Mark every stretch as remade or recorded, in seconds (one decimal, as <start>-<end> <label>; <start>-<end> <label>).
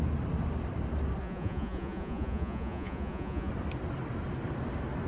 0.0-1.2 recorded; 1.2-3.5 remade; 3.5-5.1 recorded